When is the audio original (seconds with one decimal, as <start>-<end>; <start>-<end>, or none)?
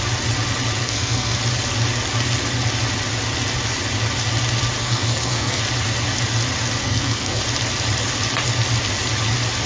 0.0-0.8; 1.4-4.8; 5.6-6.8; 7.4-9.7